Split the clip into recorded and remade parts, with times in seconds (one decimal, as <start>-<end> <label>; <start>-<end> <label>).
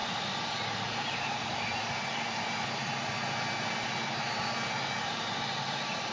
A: 0.0-2.2 remade; 2.2-6.1 recorded